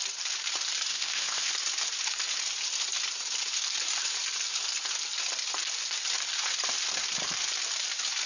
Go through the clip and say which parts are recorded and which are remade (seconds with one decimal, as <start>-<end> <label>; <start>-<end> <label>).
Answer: 0.0-0.9 recorded; 0.9-1.5 remade; 1.5-8.3 recorded